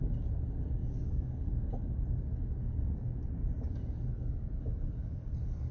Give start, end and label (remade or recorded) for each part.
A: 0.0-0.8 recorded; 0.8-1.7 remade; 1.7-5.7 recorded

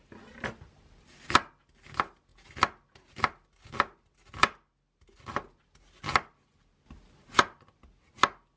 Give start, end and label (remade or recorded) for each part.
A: 0.0-8.6 recorded

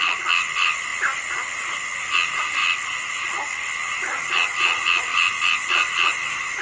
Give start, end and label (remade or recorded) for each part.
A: 0.0-6.6 recorded

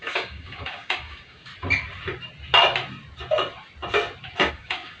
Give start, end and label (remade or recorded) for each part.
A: 0.0-1.5 remade; 1.5-4.5 recorded; 4.5-5.0 remade

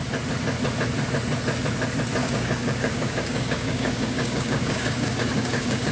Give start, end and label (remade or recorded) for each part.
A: 0.0-2.2 recorded; 2.2-5.9 remade

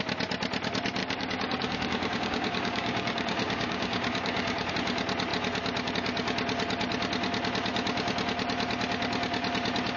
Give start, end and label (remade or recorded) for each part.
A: 0.0-1.0 recorded; 1.0-4.7 remade; 4.7-10.0 recorded